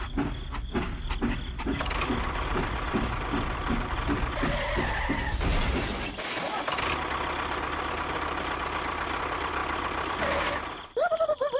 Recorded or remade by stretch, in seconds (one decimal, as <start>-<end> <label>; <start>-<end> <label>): 0.0-11.6 recorded

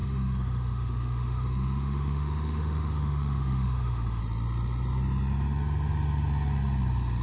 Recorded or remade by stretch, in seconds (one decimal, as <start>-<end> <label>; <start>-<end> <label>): 0.0-4.2 remade; 4.2-7.2 recorded